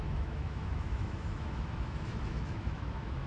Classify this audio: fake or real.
fake